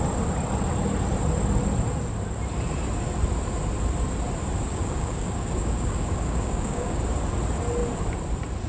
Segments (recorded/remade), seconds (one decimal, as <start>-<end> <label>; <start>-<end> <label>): 0.0-4.7 recorded; 4.7-7.0 remade; 7.0-8.7 recorded